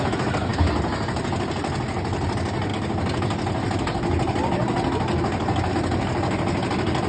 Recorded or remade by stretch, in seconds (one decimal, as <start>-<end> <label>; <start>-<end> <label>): 0.0-7.1 recorded